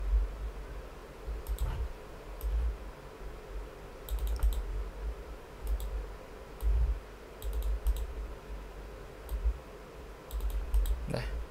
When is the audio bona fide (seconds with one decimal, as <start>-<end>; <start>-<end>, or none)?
0.0-1.0; 2.4-11.5